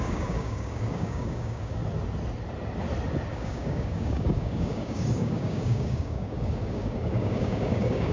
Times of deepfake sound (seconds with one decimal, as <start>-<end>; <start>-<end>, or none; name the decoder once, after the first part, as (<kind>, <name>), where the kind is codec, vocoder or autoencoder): 0.0-1.8 (codec, DAC); 3.3-8.1